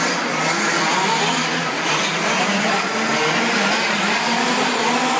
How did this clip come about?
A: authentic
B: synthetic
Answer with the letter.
A